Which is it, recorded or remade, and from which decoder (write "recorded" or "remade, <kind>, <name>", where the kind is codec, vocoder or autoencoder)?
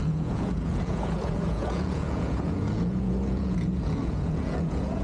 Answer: remade, vocoder, Vocos